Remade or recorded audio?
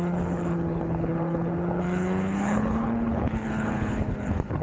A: remade